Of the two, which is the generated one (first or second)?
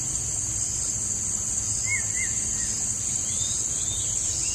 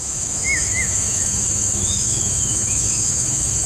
second